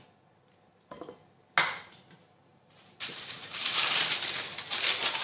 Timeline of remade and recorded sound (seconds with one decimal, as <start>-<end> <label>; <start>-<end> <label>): 0.0-2.5 recorded; 2.5-4.0 remade; 4.0-5.2 recorded